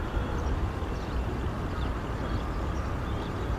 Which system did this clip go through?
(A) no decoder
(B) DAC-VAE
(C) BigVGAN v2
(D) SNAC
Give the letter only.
C